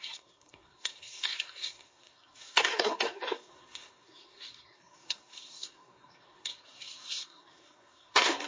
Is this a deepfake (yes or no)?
yes